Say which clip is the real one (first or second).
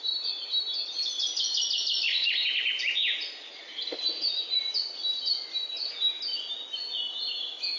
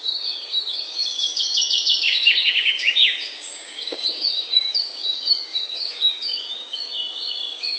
first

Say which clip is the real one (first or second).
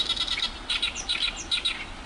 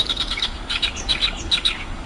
first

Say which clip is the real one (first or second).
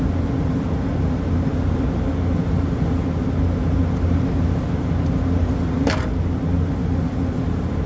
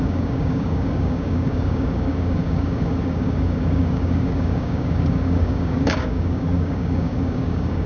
first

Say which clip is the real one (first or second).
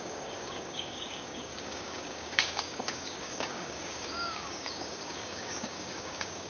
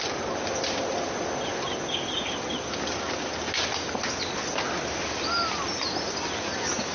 second